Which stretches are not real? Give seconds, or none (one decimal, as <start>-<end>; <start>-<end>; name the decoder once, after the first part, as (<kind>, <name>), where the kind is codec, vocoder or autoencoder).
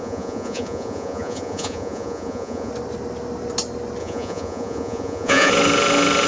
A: 0.0-2.7 (vocoder, Vocos); 4.0-5.5